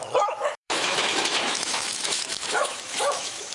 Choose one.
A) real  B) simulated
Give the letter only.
B